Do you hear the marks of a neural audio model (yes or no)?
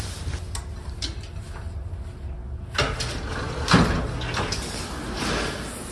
no